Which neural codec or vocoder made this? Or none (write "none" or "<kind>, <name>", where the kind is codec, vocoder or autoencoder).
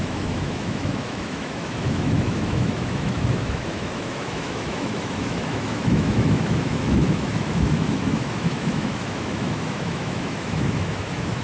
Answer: autoencoder, DAC-VAE